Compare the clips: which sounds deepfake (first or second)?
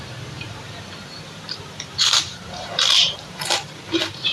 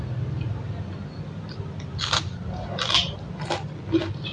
first